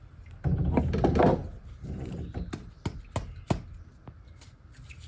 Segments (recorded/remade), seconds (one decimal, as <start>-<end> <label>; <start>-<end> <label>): 0.0-5.1 recorded